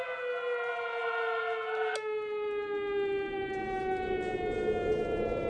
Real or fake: real